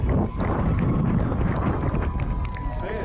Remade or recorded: recorded